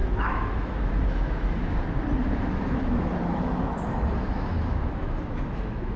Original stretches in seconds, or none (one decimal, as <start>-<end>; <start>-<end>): 1.7-2.2